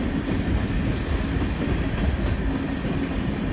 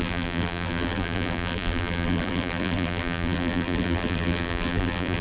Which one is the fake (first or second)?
second